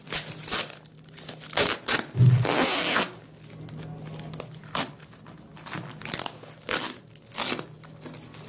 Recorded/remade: recorded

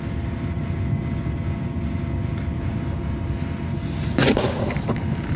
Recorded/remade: recorded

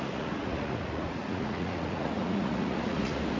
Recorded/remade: remade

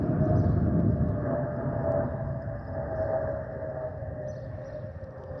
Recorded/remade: recorded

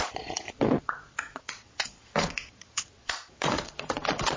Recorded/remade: remade